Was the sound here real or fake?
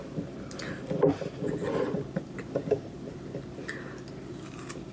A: real